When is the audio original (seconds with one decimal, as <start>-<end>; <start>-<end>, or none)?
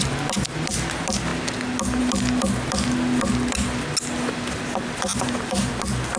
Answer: 0.0-5.1; 5.7-6.2